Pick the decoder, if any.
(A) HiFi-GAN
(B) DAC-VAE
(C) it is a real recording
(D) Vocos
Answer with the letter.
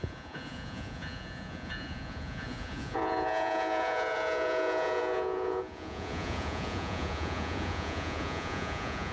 D